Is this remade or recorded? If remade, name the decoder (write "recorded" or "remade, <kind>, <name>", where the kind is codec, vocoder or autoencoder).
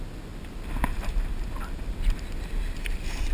recorded